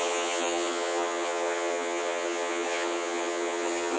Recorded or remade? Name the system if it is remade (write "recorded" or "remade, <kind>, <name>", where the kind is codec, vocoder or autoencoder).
remade, vocoder, HiFi-GAN